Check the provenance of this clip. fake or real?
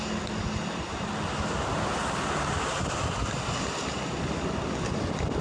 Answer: real